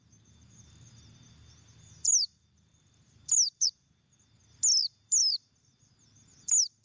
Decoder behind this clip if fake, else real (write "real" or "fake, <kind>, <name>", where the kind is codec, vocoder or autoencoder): real